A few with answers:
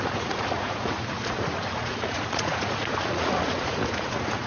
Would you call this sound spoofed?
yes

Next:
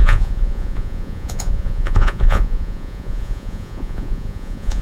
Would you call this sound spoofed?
yes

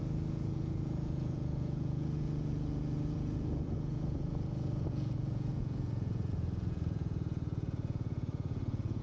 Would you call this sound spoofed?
yes